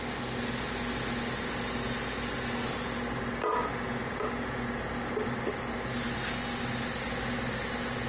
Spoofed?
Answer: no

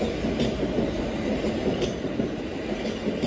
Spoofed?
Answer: yes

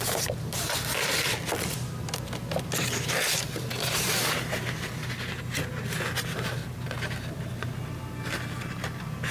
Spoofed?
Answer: no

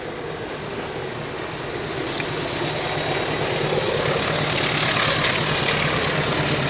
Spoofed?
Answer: no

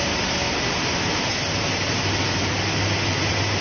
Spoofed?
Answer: no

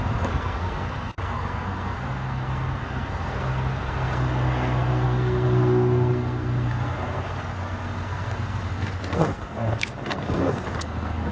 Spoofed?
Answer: yes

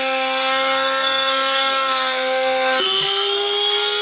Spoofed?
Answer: yes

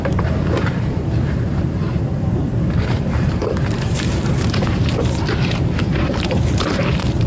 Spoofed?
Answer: yes